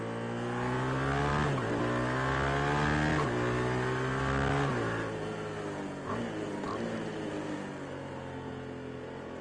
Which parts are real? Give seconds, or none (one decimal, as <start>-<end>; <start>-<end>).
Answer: 0.0-9.4